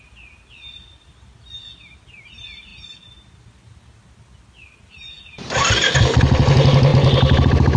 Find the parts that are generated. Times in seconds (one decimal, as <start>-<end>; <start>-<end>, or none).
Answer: none